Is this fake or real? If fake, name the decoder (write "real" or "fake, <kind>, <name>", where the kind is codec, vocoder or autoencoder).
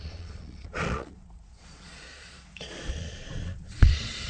fake, vocoder, Vocos